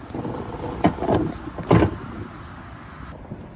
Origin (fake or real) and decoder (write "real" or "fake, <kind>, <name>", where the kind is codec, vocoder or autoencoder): real